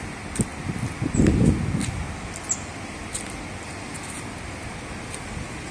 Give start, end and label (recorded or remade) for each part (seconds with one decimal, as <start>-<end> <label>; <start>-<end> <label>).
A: 0.0-5.7 recorded